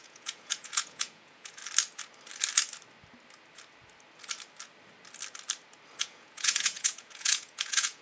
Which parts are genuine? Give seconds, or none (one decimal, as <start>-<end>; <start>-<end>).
1.6-6.0